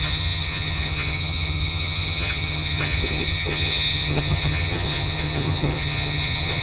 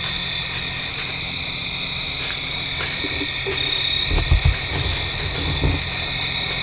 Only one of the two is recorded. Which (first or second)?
second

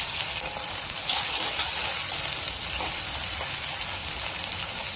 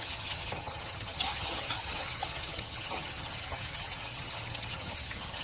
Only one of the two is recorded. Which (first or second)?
first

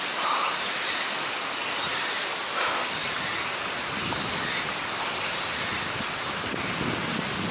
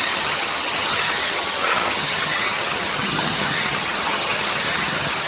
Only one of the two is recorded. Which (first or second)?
first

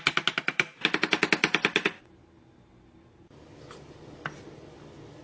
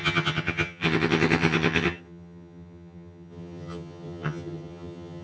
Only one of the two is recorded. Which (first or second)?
first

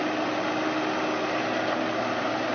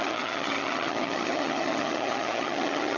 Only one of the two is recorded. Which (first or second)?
first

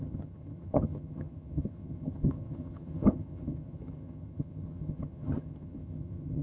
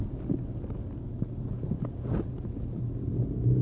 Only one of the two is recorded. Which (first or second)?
second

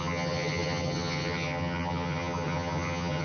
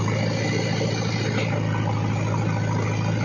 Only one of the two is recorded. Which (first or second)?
second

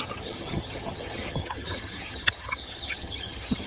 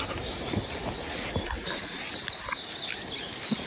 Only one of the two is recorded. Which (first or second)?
second